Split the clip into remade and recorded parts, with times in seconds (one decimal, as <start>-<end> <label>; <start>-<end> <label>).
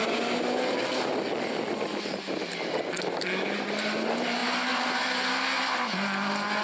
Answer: 0.0-6.6 recorded